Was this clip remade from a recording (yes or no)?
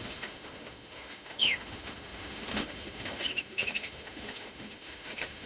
yes